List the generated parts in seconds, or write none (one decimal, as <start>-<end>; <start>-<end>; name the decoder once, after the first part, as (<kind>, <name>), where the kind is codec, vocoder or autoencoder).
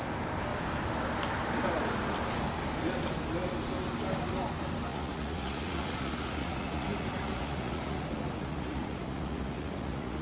4.9-10.2 (vocoder, Vocos)